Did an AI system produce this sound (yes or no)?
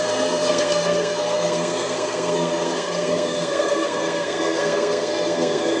yes